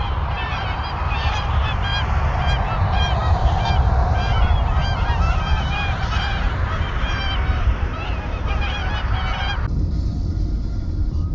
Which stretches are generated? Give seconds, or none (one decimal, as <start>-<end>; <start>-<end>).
0.0-1.9; 2.8-8.8; 9.7-11.3